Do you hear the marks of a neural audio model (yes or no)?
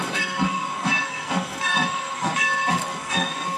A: yes